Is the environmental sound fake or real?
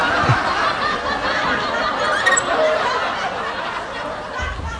real